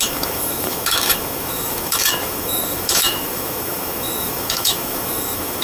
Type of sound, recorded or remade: remade